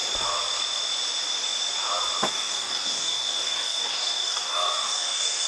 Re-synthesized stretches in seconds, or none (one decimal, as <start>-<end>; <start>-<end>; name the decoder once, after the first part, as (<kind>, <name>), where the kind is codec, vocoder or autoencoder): 2.3-5.5 (codec, DAC)